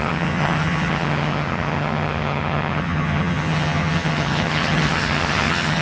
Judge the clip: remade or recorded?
remade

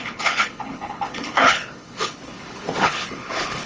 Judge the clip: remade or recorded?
remade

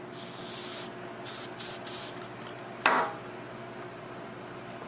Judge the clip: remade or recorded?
recorded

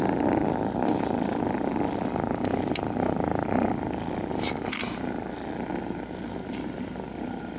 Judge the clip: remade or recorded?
recorded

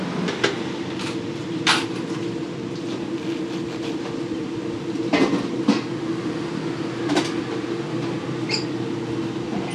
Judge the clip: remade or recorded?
recorded